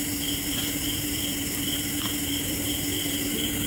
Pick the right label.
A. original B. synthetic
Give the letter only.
B